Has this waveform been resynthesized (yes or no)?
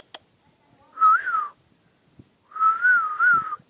no